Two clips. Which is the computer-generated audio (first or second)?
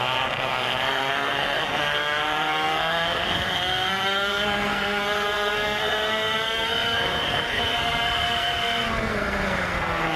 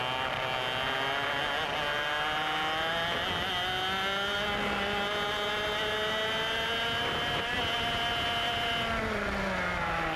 first